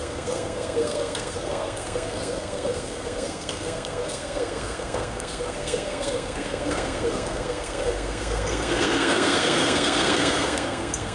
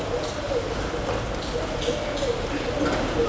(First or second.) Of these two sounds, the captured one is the second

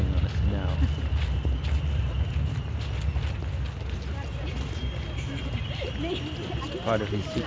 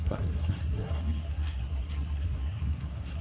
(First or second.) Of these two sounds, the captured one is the first